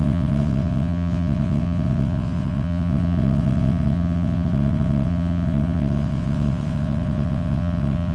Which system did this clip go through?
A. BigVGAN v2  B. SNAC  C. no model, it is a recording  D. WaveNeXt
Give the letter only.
D